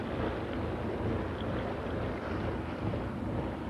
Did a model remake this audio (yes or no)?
yes